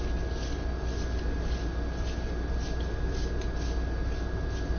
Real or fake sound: real